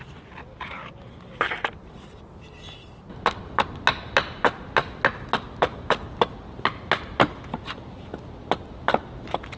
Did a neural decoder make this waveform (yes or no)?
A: no